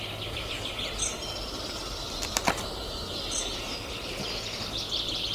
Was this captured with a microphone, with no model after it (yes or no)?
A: yes